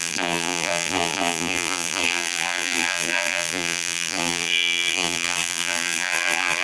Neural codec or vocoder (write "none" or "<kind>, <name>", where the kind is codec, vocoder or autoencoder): vocoder, BigVGAN v2